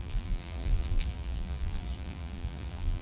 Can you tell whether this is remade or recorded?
remade